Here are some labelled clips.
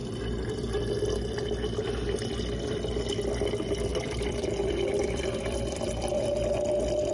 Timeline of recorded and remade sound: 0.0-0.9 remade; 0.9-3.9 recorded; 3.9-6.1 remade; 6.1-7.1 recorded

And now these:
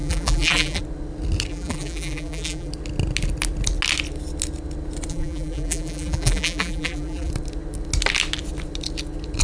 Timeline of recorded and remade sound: 0.0-0.8 remade; 0.8-1.5 recorded; 1.5-2.7 remade; 2.7-5.1 recorded; 5.1-7.3 remade; 7.3-9.4 recorded

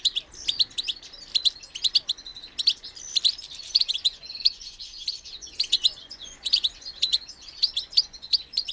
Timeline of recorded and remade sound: 0.0-3.6 recorded; 3.6-8.7 remade

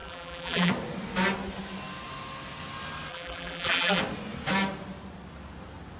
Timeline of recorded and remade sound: 0.0-0.7 remade; 0.7-3.1 recorded; 3.1-4.0 remade; 4.0-6.0 recorded